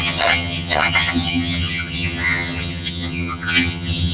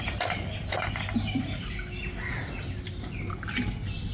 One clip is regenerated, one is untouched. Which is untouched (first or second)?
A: second